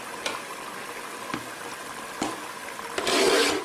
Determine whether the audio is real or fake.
real